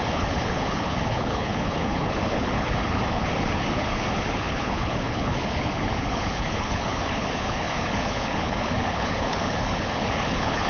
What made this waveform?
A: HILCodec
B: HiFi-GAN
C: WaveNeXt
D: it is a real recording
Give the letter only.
A